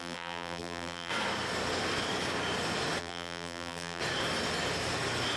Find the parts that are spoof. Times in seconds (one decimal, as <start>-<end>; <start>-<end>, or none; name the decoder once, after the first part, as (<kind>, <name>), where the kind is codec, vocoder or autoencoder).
0.0-1.1 (vocoder, BigVGAN v2); 3.0-4.0